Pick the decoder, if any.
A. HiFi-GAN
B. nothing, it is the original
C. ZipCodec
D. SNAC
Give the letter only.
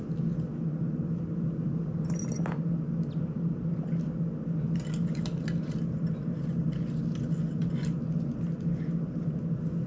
B